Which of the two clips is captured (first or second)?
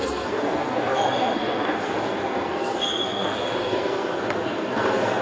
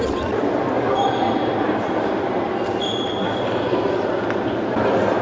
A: second